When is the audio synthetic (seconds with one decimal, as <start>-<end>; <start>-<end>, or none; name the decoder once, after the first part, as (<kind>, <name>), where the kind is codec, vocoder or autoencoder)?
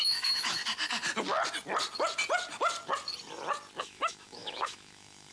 0.0-0.6 (autoencoder, DAC-VAE); 3.8-5.3